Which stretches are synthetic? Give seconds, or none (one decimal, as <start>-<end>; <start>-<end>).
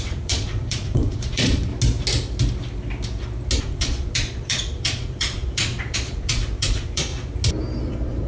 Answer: 0.0-1.7; 3.6-7.1; 7.8-8.3